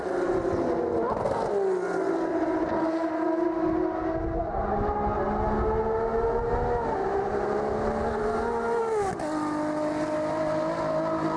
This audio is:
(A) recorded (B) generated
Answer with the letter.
A